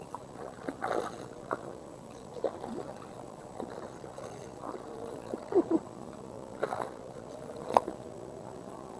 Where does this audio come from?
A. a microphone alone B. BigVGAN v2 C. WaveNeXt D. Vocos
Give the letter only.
D